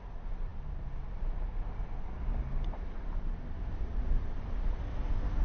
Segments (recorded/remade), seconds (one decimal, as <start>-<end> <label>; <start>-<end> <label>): 0.0-5.4 recorded